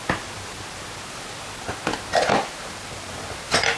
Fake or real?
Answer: real